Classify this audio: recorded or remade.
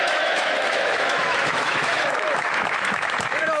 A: remade